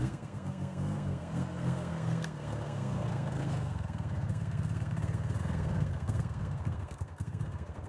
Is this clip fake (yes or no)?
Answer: yes